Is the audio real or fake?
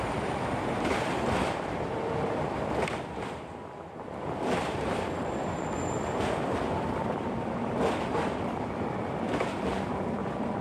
fake